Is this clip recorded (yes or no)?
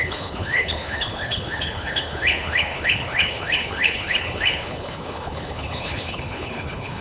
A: no